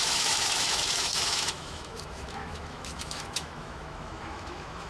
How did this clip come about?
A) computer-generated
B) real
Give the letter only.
A